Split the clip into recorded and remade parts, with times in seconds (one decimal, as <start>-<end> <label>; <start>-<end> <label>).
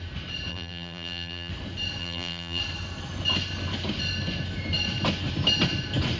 0.0-0.5 recorded; 0.5-1.5 remade; 1.5-2.0 recorded; 2.0-2.6 remade; 2.6-6.2 recorded